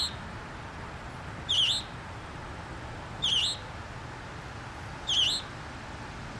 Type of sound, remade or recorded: recorded